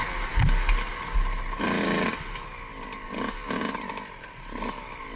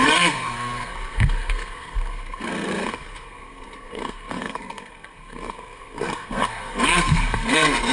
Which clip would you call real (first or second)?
first